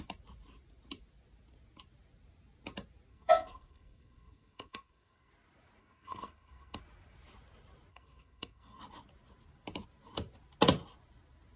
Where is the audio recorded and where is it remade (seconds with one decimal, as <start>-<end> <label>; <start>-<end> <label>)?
0.0-3.1 recorded; 3.1-5.3 remade; 5.3-5.8 recorded; 5.8-6.8 remade; 6.8-7.9 recorded; 7.9-8.8 remade; 8.8-11.6 recorded